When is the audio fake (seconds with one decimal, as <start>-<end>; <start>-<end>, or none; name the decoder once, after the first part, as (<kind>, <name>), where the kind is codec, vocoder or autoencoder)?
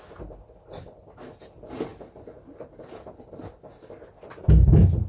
none